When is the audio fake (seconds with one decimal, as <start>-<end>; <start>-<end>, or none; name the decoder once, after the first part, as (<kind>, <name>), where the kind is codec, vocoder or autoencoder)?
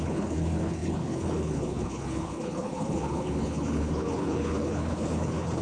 0.0-5.6 (codec, HILCodec)